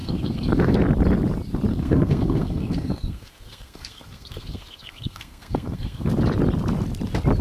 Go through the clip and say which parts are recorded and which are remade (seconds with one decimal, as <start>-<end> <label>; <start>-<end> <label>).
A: 0.0-0.8 remade; 0.8-1.7 recorded; 1.7-6.1 remade; 6.1-7.4 recorded